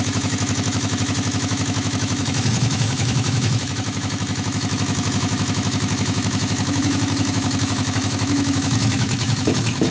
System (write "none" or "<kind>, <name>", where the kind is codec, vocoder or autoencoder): autoencoder, DAC-VAE